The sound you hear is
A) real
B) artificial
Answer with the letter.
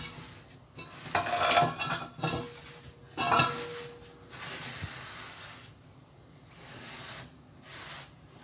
A